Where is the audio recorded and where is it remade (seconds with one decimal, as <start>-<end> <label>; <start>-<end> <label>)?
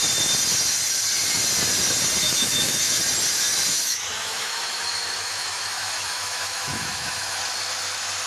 0.0-2.2 recorded; 2.2-3.0 remade; 3.0-3.7 recorded; 3.7-7.4 remade; 7.4-8.3 recorded